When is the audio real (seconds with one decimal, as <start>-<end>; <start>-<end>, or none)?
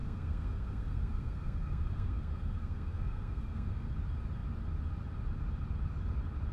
3.9-6.5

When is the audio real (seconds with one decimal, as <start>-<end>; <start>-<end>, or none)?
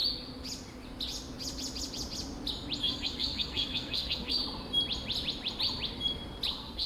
0.0-2.8; 4.4-6.5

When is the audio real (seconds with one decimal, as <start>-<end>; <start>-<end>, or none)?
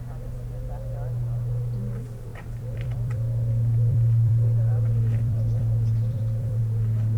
0.0-2.3; 6.6-7.2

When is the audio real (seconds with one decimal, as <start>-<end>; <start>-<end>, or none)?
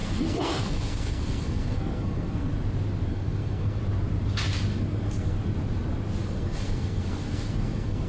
2.5-3.1; 3.8-4.7; 5.4-6.2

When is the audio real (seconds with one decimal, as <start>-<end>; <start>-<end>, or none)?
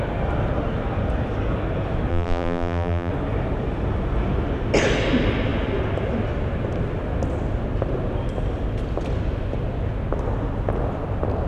0.0-2.1; 3.1-11.5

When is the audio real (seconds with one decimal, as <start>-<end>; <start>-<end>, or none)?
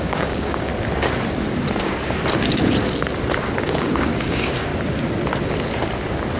0.7-3.6; 4.7-6.4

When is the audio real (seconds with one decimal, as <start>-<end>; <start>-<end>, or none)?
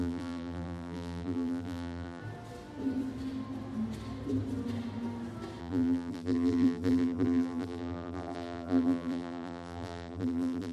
2.2-5.6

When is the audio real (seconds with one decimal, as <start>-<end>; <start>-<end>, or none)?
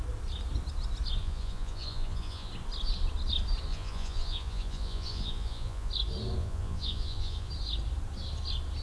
0.0-1.2; 2.5-3.7; 5.9-6.4; 7.5-8.8